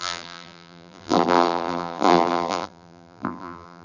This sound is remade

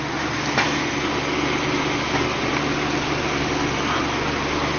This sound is recorded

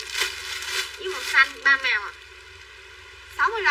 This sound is recorded